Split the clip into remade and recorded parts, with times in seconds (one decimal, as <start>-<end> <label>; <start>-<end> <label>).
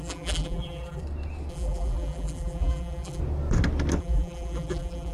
0.0-1.0 remade; 1.0-1.5 recorded; 1.5-3.2 remade; 3.2-4.0 recorded; 4.0-5.1 remade